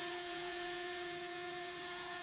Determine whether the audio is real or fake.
fake